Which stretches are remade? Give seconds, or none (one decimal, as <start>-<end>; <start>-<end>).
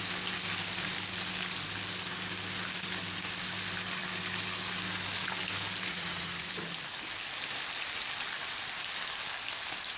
5.9-6.5